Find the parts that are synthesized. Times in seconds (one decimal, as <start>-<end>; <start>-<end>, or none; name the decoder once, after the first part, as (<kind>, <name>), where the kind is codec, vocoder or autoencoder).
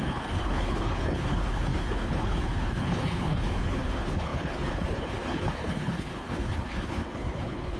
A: 0.0-7.8 (codec, HILCodec)